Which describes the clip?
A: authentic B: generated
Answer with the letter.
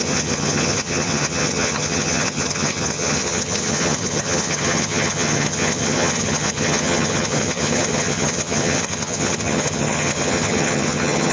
B